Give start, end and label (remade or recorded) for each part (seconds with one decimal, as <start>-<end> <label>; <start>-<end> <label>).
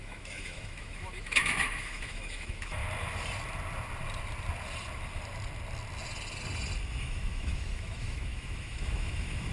0.0-2.8 remade; 2.8-7.0 recorded; 7.0-9.5 remade